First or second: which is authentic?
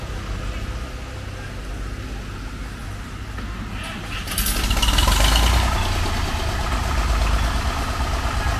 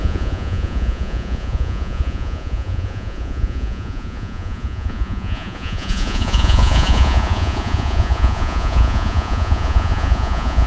first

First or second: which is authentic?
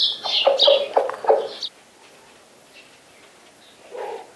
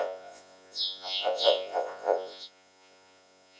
first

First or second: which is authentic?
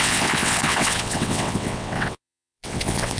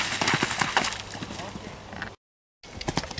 second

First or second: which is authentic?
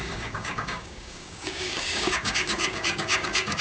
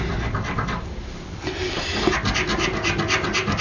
second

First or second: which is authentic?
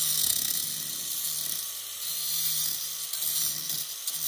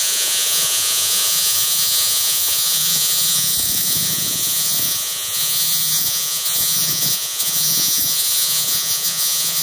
first